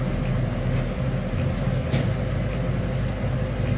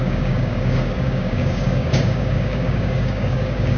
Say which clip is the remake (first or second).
second